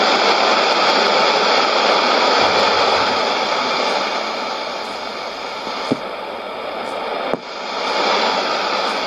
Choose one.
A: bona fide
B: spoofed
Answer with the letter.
A